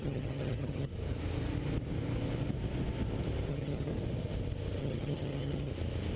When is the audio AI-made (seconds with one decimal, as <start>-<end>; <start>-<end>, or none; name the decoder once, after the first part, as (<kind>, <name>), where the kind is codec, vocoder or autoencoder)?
0.0-0.9 (vocoder, HiFi-GAN); 3.5-3.9; 4.8-5.7

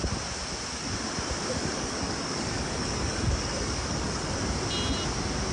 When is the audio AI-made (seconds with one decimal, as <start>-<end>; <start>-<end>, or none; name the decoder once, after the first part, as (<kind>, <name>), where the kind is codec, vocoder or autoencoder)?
1.6-4.3 (codec, DAC)